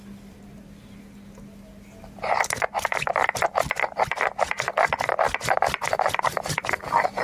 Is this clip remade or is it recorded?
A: recorded